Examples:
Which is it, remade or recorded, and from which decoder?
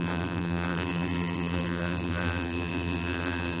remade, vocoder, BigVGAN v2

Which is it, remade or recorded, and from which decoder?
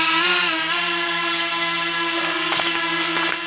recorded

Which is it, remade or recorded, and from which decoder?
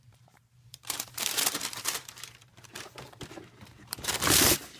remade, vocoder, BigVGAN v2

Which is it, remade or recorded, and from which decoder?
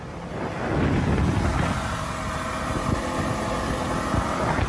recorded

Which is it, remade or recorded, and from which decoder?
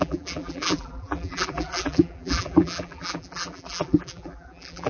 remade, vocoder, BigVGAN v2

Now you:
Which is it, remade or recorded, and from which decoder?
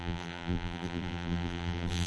remade, vocoder, BigVGAN v2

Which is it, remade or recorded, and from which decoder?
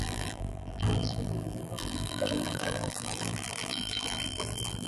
remade, vocoder, BigVGAN v2